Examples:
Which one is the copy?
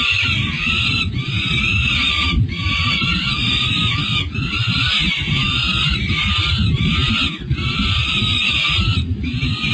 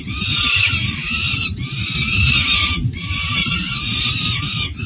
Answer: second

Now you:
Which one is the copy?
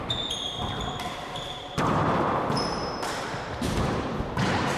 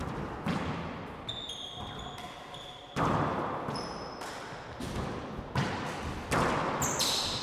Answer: first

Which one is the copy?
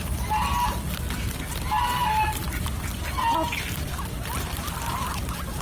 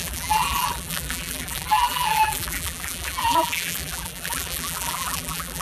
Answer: second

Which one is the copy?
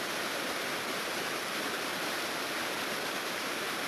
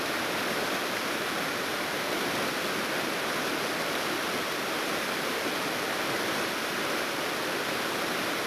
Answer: first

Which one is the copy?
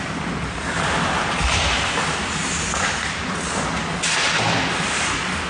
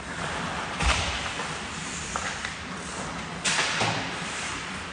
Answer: second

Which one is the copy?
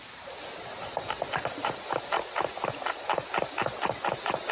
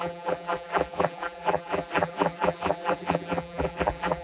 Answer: second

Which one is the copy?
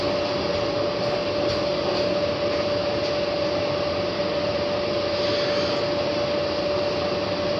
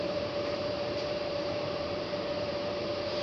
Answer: second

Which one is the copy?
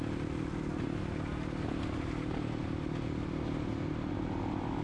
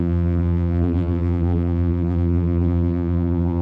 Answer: second